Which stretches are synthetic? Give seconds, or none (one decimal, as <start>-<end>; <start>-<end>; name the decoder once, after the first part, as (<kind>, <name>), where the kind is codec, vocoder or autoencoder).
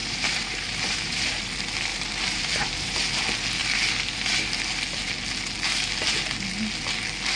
0.0-1.4 (vocoder, BigVGAN v2); 1.9-3.2